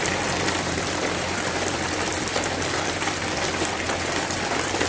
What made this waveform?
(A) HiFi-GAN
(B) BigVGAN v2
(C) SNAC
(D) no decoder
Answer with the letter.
B